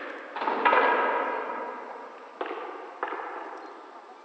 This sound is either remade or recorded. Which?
recorded